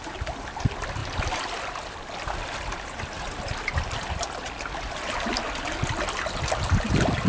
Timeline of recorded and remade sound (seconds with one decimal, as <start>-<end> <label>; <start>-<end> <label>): 0.0-1.0 recorded; 1.0-1.8 remade; 1.8-7.3 recorded